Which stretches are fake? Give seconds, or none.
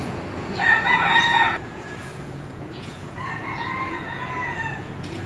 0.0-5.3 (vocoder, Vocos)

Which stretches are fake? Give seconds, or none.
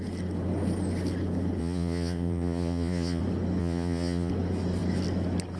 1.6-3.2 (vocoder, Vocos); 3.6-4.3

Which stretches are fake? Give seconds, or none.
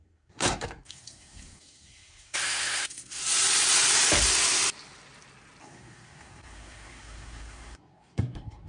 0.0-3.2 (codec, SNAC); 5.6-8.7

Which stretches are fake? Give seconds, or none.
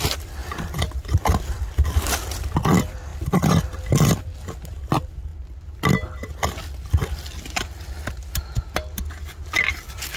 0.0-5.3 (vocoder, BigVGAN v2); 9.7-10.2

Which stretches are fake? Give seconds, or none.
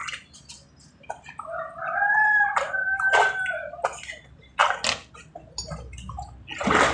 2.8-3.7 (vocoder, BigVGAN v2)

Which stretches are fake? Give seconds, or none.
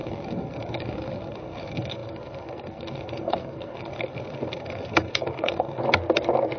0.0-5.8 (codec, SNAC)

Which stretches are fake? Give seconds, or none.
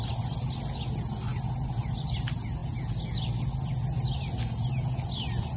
none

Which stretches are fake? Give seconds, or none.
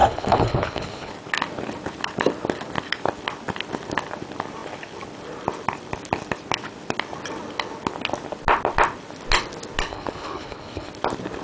0.0-1.1 (codec, HILCodec); 9.9-10.9